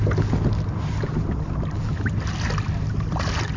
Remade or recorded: recorded